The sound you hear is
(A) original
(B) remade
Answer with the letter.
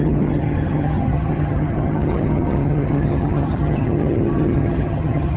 B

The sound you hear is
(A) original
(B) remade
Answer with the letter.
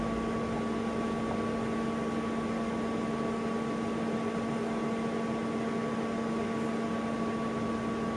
A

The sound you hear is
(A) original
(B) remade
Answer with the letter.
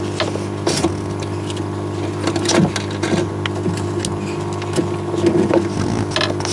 A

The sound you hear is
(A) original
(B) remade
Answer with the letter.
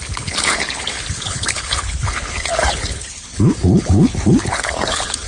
B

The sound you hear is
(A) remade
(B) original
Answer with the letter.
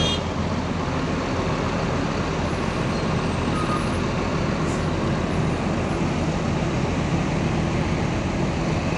B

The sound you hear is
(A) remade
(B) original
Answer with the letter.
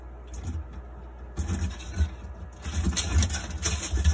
B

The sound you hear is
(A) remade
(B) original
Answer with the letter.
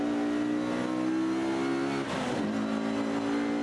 B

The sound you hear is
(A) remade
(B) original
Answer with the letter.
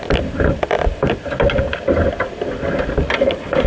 B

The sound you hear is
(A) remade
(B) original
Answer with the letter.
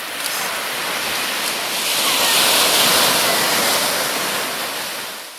B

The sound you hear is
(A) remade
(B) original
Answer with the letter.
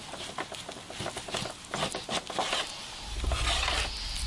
B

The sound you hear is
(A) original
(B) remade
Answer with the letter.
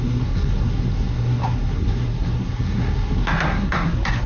B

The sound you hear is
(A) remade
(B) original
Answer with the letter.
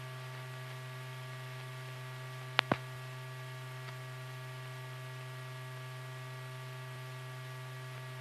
B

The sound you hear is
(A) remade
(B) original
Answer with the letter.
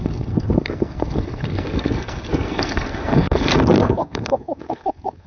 A